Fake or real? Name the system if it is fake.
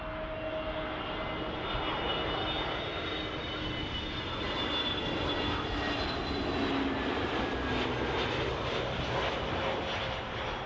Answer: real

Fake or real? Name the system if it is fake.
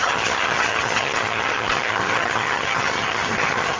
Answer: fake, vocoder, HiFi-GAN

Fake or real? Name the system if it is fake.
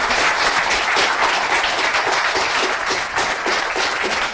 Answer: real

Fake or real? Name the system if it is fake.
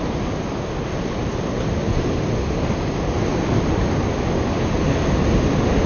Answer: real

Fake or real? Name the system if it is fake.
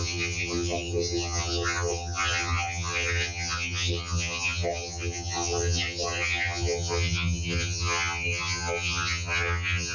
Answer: fake, vocoder, HiFi-GAN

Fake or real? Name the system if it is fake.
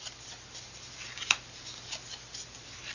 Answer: real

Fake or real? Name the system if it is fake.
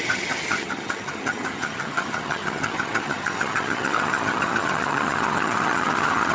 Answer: fake, vocoder, HiFi-GAN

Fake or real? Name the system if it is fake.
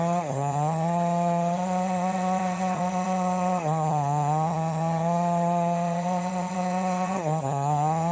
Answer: fake, vocoder, HiFi-GAN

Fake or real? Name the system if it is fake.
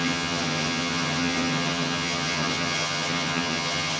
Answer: fake, vocoder, HiFi-GAN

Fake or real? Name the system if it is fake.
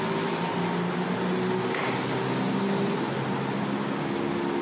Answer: real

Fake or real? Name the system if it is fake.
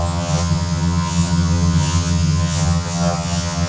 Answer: fake, vocoder, HiFi-GAN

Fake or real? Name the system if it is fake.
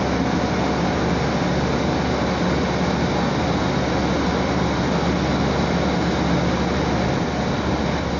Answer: real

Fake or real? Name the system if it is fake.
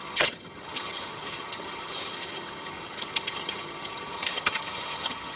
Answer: fake, vocoder, HiFi-GAN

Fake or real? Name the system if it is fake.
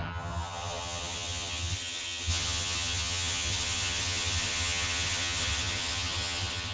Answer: fake, vocoder, HiFi-GAN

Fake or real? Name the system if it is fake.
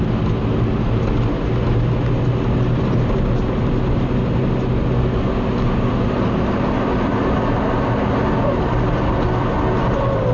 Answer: real